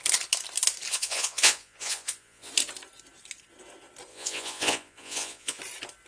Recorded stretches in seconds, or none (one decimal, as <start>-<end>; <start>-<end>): 0.0-0.9; 2.5-4.1; 5.6-6.1